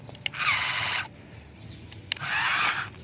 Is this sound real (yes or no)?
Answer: yes